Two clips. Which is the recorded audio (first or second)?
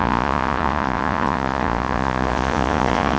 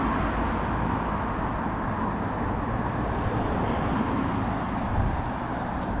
second